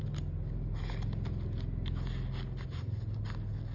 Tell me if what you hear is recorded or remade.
recorded